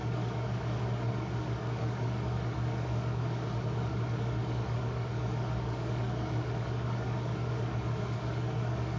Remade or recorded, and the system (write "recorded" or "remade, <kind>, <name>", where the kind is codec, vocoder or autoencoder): remade, codec, DAC